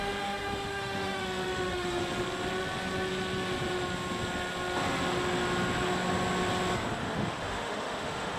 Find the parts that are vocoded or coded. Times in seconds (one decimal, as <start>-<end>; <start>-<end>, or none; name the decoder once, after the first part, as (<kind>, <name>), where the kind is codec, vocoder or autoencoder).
0.0-2.0 (autoencoder, DAC-VAE); 7.0-8.4